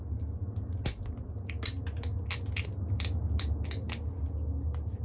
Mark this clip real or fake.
real